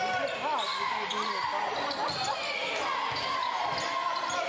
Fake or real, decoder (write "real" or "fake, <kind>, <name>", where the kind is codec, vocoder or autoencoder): real